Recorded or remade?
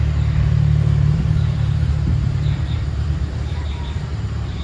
remade